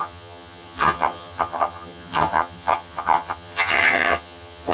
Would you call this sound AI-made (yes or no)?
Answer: yes